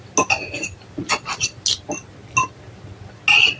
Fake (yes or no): no